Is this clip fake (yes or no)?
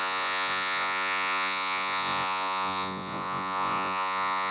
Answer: yes